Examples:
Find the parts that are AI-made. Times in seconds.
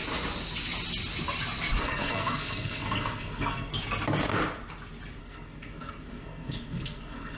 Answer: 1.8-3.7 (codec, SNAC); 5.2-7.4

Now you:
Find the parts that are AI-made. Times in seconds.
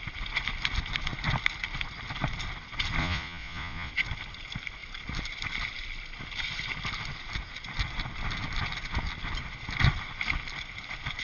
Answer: 3.0-3.9 (vocoder, Vocos)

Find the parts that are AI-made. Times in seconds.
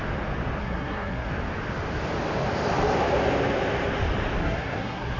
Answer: 0.6-1.3 (codec, SNAC); 4.4-5.2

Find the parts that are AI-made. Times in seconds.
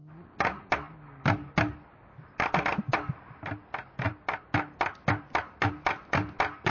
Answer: none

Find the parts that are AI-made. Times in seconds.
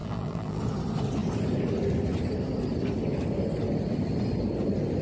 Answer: 0.0-0.6 (vocoder, BigVGAN v2)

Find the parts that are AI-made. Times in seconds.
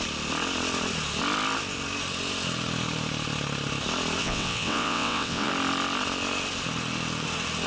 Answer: 4.2-5.5 (vocoder, WaveNeXt)